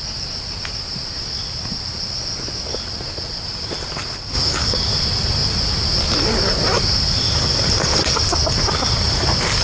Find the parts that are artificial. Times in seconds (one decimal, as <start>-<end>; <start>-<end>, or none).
4.4-4.9